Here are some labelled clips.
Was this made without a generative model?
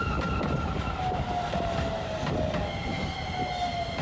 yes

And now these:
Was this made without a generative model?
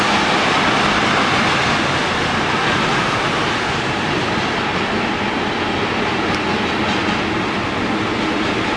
yes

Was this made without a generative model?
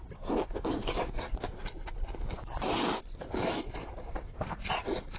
yes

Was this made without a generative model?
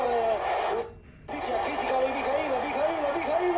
yes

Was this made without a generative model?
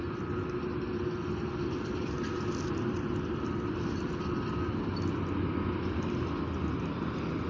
yes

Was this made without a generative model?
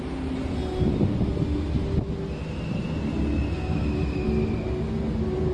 yes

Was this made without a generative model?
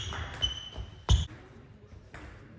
yes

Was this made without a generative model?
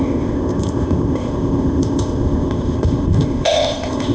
no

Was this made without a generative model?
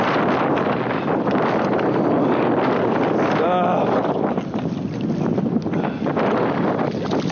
yes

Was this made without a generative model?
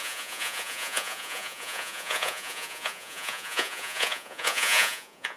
no